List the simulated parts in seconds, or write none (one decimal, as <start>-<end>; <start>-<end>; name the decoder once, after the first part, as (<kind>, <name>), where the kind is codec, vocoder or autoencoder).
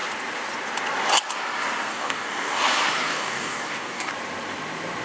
1.9-2.6 (codec, DAC); 3.1-4.1